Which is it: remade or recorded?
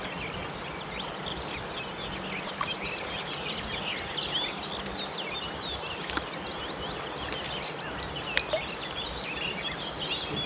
recorded